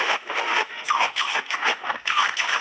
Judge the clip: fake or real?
fake